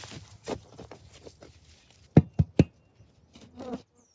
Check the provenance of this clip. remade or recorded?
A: recorded